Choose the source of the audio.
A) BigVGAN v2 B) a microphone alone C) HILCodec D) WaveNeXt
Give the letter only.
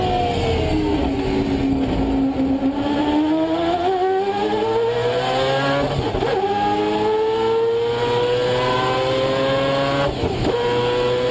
B